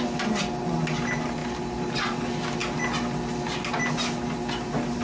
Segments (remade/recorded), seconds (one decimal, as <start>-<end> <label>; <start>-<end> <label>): 0.0-5.0 recorded